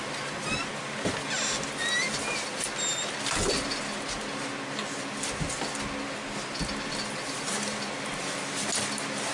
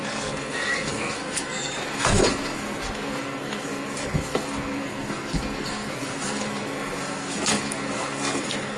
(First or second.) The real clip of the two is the first